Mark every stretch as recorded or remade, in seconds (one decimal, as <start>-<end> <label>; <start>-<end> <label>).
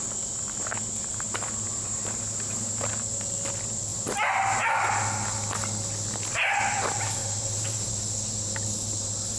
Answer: 0.0-1.1 recorded; 1.1-2.7 remade; 2.7-7.2 recorded; 7.2-7.9 remade; 7.9-9.4 recorded